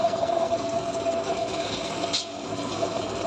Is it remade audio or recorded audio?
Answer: remade